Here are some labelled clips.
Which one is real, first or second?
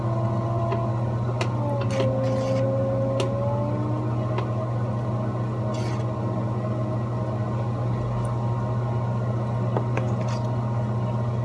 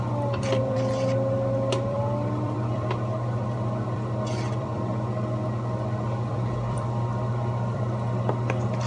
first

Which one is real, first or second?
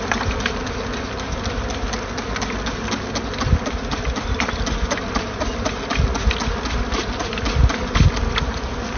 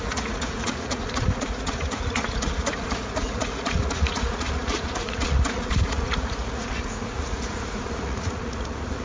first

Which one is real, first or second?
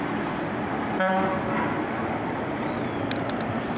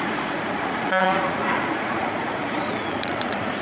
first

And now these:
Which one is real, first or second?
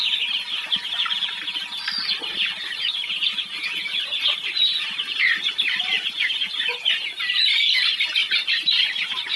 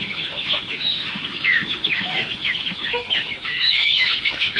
first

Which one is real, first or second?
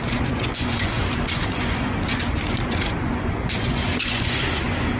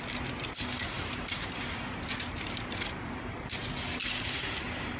second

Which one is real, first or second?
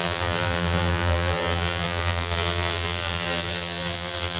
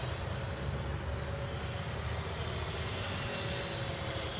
second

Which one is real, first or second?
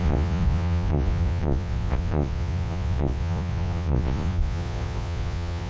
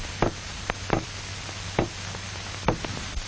second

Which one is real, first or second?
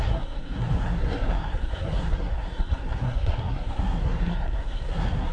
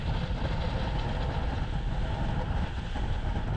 second